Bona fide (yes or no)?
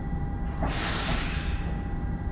yes